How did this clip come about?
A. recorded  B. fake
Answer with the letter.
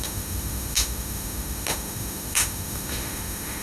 B